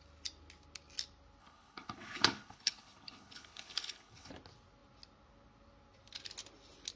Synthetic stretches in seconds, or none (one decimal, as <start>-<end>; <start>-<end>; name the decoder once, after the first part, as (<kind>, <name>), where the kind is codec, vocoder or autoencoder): 1.4-4.3 (codec, HILCodec)

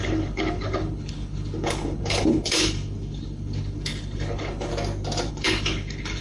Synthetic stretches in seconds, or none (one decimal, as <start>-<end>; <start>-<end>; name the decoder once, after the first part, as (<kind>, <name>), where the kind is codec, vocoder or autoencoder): 0.0-4.7 (codec, HILCodec); 5.3-6.2

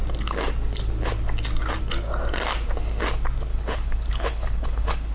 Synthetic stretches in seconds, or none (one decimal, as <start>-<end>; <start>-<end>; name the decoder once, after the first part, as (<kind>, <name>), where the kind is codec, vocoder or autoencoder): 3.5-5.1 (codec, HILCodec)

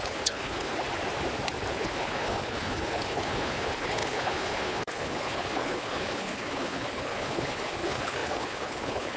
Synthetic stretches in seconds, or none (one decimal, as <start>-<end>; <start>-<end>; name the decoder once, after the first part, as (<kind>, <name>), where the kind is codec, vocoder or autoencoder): 0.0-0.7 (codec, HILCodec); 1.7-9.2

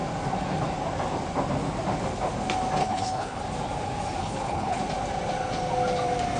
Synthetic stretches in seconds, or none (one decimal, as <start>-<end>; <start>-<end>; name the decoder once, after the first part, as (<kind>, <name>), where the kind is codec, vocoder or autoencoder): 2.8-3.4 (codec, HILCodec); 4.2-4.8